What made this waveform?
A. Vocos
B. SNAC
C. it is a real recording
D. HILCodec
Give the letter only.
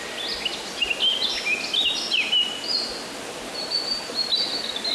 C